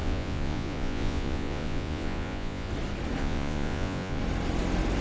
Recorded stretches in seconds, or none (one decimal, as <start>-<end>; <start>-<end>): 2.7-3.2; 4.2-5.0